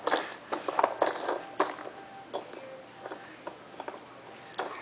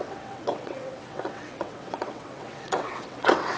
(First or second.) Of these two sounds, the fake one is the second